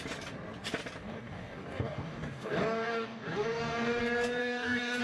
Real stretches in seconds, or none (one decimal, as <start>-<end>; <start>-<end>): 0.0-1.0; 4.0-4.4